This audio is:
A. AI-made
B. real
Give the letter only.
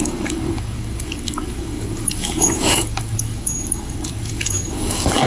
A